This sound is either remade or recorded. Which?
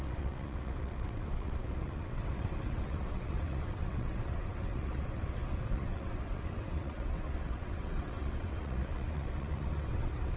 remade